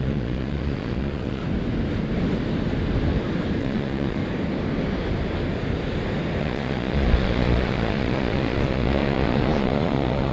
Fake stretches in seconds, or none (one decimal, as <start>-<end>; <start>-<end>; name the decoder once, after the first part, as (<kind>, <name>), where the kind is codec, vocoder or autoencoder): 0.0-1.4 (vocoder, Vocos); 3.6-4.2; 6.4-10.3